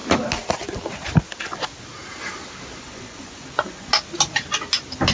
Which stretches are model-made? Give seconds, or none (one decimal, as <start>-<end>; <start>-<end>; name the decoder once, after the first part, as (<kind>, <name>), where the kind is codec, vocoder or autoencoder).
2.8-3.9 (vocoder, Vocos)